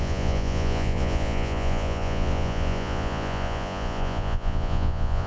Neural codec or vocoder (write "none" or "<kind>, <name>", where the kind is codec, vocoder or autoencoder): vocoder, Vocos